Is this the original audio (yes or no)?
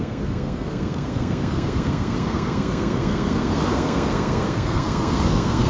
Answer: no